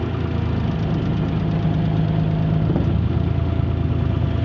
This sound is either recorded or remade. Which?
recorded